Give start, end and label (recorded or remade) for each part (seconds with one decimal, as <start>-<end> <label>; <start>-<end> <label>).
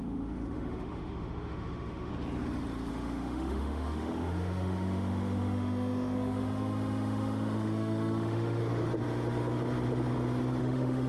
0.0-2.1 remade; 2.1-2.9 recorded; 2.9-8.6 remade; 8.6-10.6 recorded; 10.6-11.1 remade